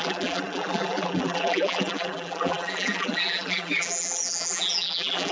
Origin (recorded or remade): remade